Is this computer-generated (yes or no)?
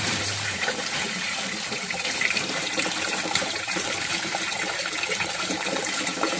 yes